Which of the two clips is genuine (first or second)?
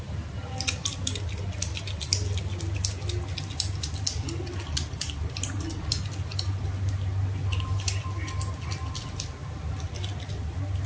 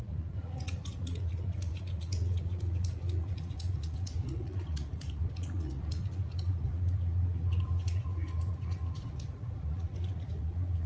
first